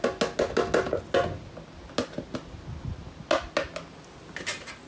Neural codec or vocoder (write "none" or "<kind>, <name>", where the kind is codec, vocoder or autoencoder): none